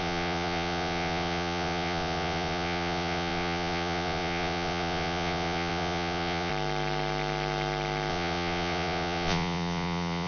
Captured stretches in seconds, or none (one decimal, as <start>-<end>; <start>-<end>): 6.5-8.1